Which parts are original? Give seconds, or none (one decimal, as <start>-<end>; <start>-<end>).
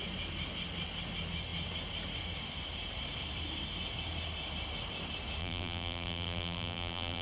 0.0-5.4